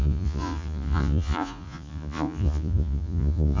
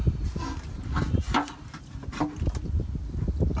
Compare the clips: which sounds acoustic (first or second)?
second